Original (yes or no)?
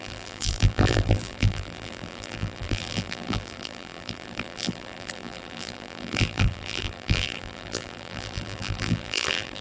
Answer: no